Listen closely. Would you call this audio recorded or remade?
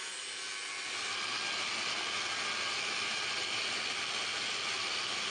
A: recorded